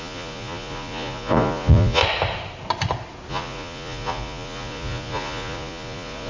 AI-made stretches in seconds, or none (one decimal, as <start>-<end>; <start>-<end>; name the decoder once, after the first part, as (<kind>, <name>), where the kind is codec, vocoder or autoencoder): 0.0-2.0 (vocoder, Vocos); 3.3-6.3